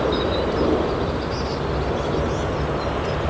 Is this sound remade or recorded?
recorded